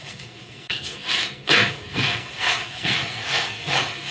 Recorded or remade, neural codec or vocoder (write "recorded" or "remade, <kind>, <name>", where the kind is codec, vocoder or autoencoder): remade, codec, SNAC